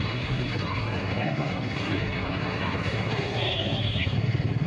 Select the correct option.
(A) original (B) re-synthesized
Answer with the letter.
B